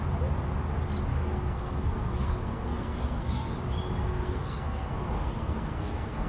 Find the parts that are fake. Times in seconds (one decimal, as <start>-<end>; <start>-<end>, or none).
1.1-3.5; 4.0-6.3